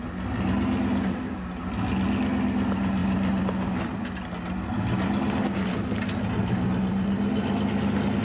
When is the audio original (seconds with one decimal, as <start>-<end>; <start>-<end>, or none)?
0.0-8.2